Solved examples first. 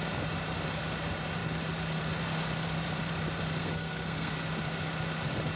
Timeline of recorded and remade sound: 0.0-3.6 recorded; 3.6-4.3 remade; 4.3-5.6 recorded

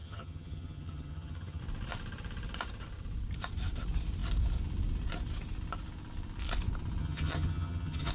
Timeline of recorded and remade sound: 0.0-1.6 remade; 1.6-7.0 recorded; 7.0-8.1 remade

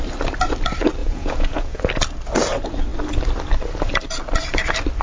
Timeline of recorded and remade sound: 0.0-1.0 recorded; 1.0-1.9 remade; 1.9-5.0 recorded

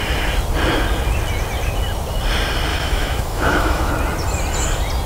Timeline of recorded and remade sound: 0.0-2.7 recorded; 2.7-3.9 remade; 3.9-5.1 recorded

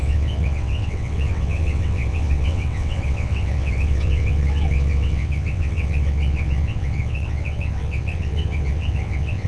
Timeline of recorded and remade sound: 0.0-9.5 remade

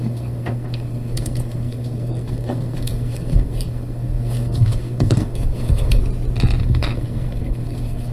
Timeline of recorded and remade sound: 0.0-6.0 remade; 6.0-6.6 recorded; 6.6-8.1 remade

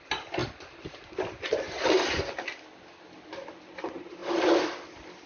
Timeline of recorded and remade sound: 0.0-5.3 recorded

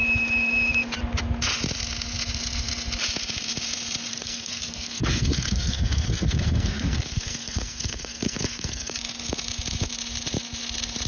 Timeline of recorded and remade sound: 0.0-4.1 recorded; 4.1-8.9 remade; 8.9-11.1 recorded